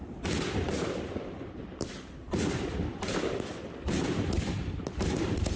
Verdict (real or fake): real